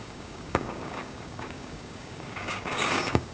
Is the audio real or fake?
fake